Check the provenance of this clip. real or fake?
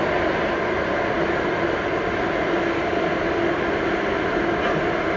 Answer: real